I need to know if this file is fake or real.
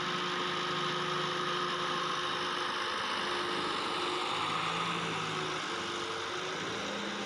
real